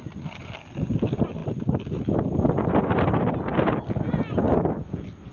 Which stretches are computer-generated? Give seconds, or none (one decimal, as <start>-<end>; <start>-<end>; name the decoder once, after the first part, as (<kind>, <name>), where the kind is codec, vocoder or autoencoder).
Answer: none